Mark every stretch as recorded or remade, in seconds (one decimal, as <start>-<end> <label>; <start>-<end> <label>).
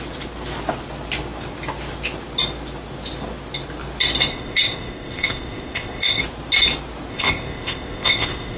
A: 0.0-4.3 recorded; 4.3-6.2 remade; 6.2-7.1 recorded; 7.1-8.6 remade